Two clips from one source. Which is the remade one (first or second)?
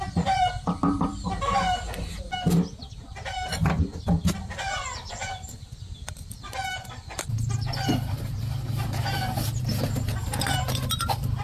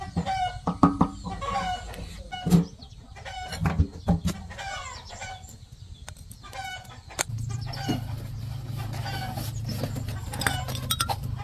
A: first